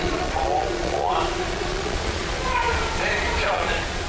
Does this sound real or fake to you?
fake